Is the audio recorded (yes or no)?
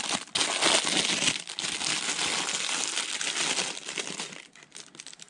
yes